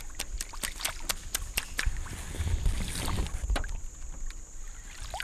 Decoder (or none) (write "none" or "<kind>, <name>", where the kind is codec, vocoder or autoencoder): none